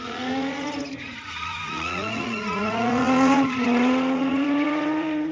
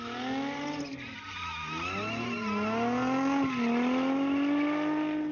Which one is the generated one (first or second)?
first